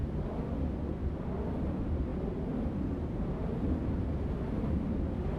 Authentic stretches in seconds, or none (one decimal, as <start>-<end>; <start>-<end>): 0.0-2.1